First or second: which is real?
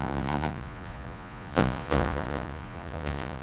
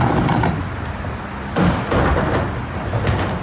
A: second